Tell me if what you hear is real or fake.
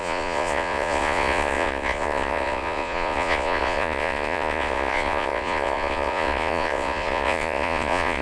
fake